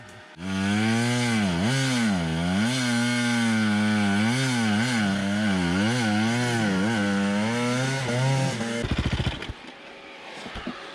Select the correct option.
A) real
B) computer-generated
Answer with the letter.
A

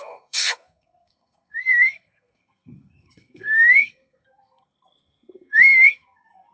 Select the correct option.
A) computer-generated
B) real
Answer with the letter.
A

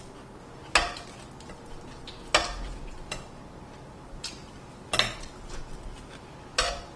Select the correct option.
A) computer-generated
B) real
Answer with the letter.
B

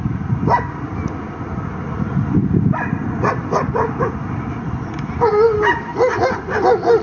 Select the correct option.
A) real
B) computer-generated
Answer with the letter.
A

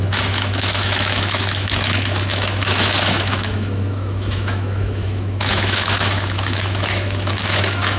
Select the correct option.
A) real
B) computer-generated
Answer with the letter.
B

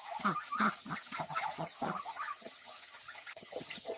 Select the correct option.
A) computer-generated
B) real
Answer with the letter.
A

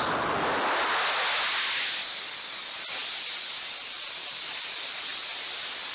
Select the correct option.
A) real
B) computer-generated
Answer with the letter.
A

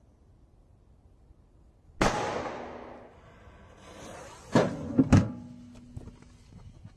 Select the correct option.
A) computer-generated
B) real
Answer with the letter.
B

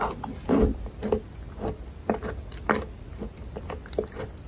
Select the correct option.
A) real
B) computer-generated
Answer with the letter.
A